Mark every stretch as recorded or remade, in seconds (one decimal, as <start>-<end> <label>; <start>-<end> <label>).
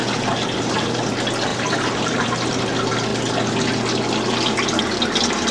0.0-1.0 remade; 1.0-1.5 recorded; 1.5-2.7 remade; 2.7-5.5 recorded